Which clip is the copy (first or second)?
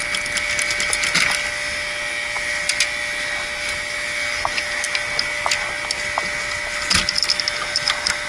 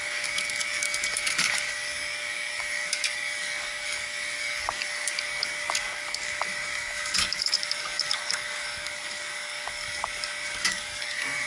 second